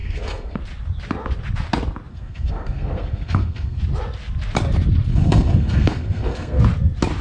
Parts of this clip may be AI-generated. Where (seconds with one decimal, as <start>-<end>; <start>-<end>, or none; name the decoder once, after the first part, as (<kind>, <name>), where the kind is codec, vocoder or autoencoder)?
0.0-0.6 (codec, SNAC); 2.1-3.8; 5.1-6.6